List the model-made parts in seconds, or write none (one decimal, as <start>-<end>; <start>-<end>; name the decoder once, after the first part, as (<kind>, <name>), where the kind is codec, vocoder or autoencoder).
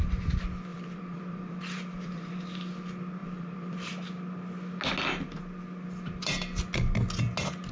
0.7-2.3 (vocoder, BigVGAN v2); 3.2-3.9